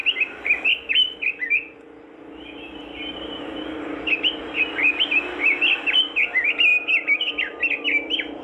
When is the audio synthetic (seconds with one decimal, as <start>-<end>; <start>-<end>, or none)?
2.8-4.5